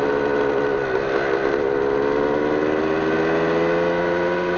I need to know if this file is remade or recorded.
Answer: recorded